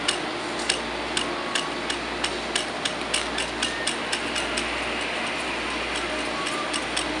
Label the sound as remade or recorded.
recorded